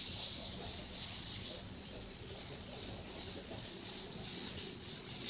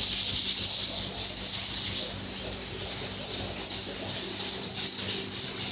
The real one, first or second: second